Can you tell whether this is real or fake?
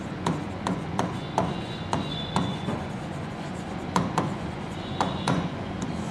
fake